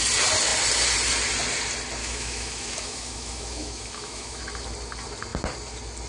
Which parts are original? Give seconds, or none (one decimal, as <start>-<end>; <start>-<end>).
0.0-2.0; 4.4-6.1